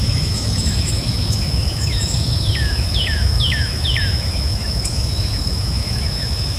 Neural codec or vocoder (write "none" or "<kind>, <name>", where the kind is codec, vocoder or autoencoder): autoencoder, DAC-VAE